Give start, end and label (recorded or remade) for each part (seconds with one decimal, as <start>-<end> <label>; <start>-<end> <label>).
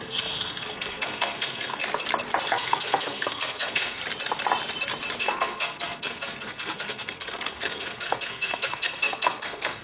0.0-1.8 remade; 1.8-2.5 recorded; 2.5-4.0 remade; 4.0-5.2 recorded; 5.2-9.8 remade